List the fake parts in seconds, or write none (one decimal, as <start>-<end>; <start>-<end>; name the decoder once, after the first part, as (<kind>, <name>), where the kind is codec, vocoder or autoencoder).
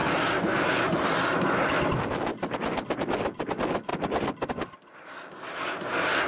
none